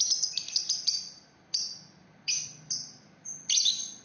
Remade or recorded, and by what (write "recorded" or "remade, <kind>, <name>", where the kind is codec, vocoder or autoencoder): recorded